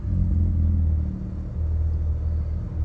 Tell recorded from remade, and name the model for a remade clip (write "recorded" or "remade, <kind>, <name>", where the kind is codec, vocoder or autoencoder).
recorded